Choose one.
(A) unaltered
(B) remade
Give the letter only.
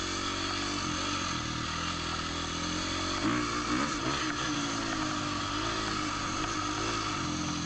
A